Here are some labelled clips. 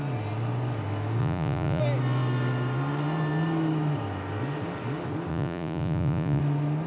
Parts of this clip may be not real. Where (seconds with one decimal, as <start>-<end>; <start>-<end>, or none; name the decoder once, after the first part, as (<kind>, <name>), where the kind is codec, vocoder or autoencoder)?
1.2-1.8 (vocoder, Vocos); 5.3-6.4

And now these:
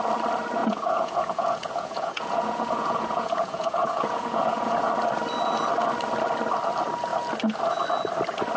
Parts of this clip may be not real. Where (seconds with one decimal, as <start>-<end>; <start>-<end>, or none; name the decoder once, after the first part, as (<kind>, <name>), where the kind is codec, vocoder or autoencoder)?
0.6-4.9 (vocoder, Vocos)

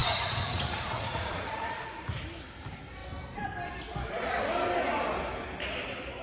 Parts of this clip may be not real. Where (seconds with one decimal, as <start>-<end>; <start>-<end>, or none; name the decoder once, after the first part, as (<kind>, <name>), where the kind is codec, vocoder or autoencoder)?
0.0-2.2 (vocoder, Vocos)

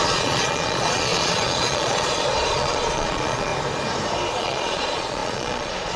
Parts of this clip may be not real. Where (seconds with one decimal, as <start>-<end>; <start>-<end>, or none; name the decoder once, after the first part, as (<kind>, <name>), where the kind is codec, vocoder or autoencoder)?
0.0-3.5 (vocoder, Vocos); 4.4-6.0

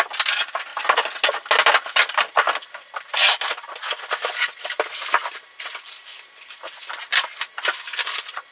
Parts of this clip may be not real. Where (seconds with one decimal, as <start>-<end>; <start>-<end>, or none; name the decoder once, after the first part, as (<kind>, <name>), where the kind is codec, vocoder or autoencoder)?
none

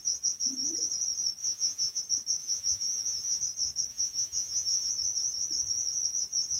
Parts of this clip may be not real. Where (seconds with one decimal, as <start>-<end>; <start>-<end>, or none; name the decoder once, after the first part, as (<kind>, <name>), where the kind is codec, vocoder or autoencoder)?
1.4-2.0 (vocoder, Vocos); 2.4-3.4; 3.9-4.9

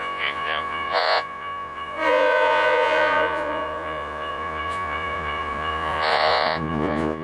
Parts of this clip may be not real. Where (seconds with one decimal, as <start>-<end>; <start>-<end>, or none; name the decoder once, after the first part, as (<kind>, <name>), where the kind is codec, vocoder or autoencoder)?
0.0-7.2 (vocoder, Vocos)

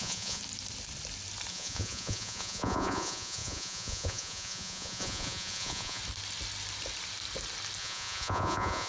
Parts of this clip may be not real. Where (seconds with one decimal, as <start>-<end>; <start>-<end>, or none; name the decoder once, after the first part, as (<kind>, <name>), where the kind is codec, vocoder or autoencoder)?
0.0-0.4 (vocoder, Vocos); 1.5-6.0; 7.8-8.9